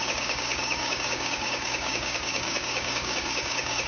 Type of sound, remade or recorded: remade